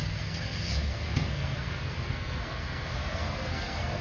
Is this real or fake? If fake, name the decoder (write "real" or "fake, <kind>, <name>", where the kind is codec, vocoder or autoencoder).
fake, codec, SNAC